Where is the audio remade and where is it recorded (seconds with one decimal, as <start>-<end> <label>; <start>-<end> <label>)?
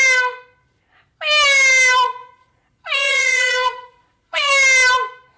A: 0.0-2.2 recorded; 2.2-4.5 remade; 4.5-5.4 recorded